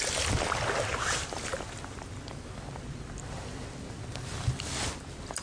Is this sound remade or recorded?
recorded